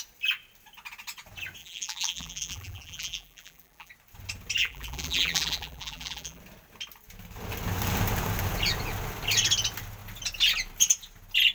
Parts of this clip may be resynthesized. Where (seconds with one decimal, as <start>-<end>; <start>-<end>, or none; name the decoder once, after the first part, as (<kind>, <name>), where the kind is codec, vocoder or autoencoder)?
1.6-3.9 (vocoder, BigVGAN v2); 4.6-6.4